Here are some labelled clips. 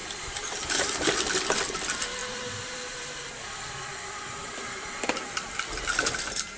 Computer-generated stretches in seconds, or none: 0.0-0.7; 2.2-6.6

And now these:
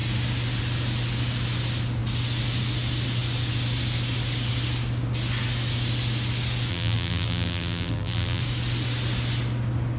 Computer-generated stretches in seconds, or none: 6.7-8.4

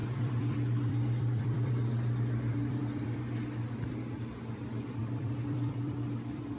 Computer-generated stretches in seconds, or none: 0.0-1.7; 2.5-3.2; 5.0-6.6

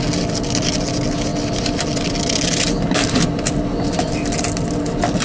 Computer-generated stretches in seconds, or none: 1.3-4.4

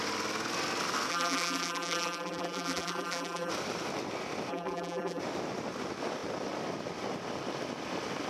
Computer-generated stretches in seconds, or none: 1.1-3.5; 4.5-5.2

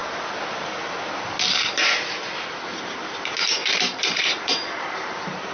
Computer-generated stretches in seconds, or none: 3.6-5.1

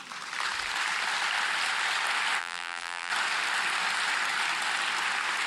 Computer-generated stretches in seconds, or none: 2.4-3.1

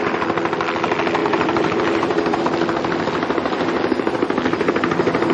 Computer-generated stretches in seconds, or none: 1.2-2.4